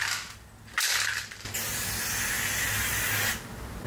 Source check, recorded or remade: recorded